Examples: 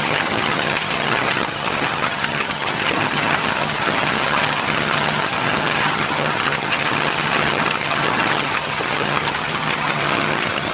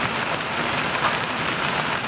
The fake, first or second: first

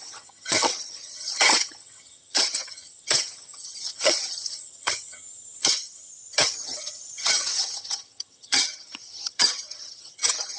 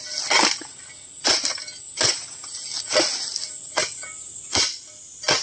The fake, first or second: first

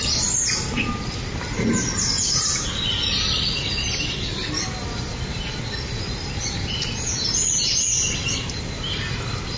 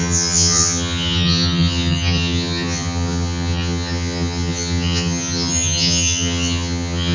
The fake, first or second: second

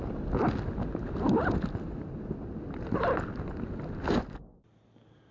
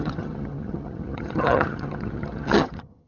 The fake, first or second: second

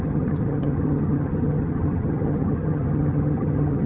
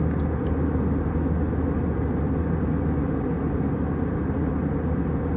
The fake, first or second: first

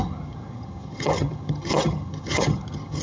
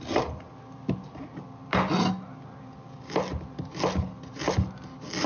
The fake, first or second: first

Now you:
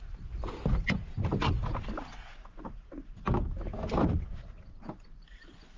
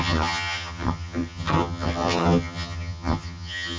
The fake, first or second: second